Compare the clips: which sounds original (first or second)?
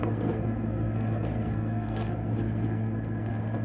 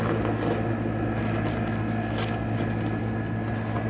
second